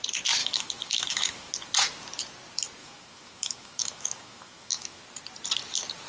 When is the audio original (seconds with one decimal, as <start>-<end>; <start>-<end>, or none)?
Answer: 0.0-0.4; 1.5-2.8; 5.0-6.1